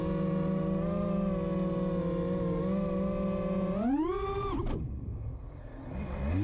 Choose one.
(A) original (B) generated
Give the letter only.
A